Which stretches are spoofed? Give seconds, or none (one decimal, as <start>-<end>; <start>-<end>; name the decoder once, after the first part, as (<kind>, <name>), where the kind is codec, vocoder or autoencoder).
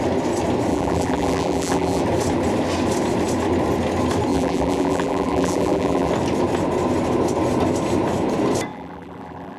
0.7-2.0 (vocoder, BigVGAN v2); 4.3-6.1; 8.7-9.6